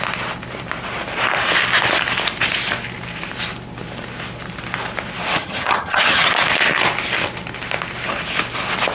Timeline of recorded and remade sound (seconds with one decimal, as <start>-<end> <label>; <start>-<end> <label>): 0.0-5.4 recorded; 5.4-6.3 remade; 6.3-8.9 recorded

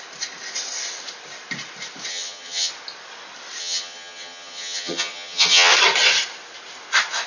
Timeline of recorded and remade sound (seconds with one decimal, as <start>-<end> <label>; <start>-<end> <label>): 0.0-2.1 recorded; 2.1-2.7 remade; 2.7-3.6 recorded; 3.6-5.7 remade; 5.7-7.3 recorded

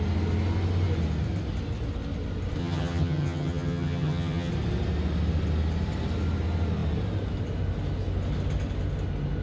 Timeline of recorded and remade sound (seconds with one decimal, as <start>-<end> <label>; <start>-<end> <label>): 0.0-2.6 recorded; 2.6-4.5 remade; 4.5-9.4 recorded

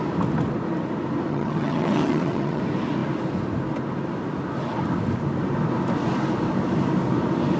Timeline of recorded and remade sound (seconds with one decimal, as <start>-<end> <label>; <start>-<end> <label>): 0.0-1.3 recorded; 1.3-2.6 remade; 2.6-7.6 recorded

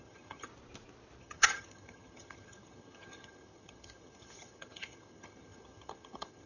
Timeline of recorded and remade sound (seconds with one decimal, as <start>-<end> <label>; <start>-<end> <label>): 0.0-0.5 remade; 0.5-1.2 recorded; 1.2-6.5 remade

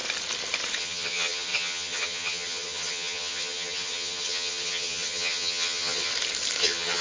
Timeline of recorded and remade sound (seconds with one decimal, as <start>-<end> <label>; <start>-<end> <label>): 0.0-0.8 recorded; 0.8-6.1 remade; 6.1-6.6 recorded; 6.6-7.0 remade